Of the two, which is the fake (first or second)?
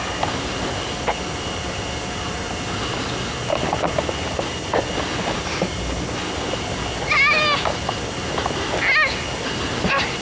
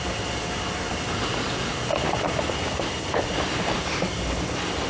second